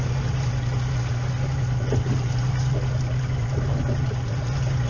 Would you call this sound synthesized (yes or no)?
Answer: no